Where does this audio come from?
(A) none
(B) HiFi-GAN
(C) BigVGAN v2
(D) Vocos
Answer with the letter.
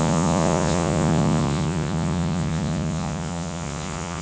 D